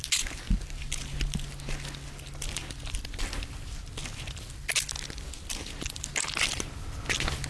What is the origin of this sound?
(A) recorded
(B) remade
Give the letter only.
A